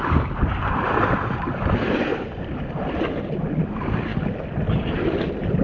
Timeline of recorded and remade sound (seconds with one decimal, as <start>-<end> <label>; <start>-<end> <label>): 0.0-0.4 recorded; 0.4-2.8 remade; 2.8-5.6 recorded